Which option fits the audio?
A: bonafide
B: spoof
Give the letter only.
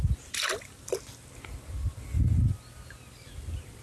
A